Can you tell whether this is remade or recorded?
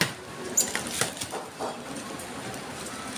remade